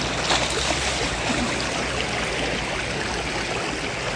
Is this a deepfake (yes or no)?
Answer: no